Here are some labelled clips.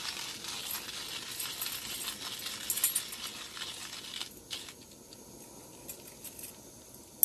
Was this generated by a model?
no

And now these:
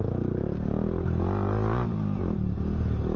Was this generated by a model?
no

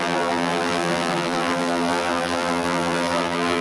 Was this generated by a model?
yes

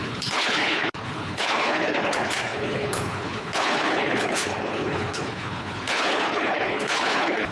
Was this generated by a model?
yes